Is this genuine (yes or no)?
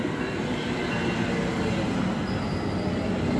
yes